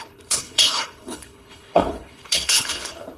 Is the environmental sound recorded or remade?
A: remade